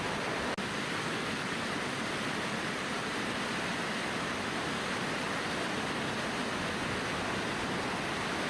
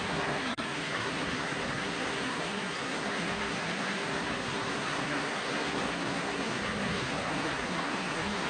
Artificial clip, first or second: second